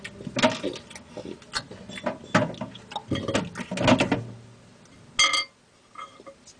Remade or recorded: recorded